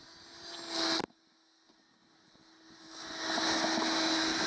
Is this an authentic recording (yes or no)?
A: yes